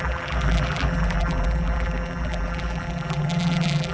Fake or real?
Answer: fake